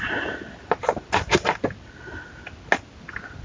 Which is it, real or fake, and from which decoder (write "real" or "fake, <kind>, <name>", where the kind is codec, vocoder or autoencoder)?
real